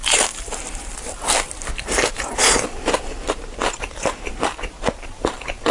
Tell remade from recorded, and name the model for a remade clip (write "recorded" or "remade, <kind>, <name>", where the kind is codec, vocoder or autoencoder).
remade, vocoder, BigVGAN v2